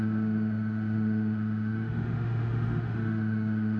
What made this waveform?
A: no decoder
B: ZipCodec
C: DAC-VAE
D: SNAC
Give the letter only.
C